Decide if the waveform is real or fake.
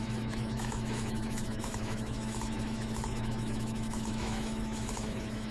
fake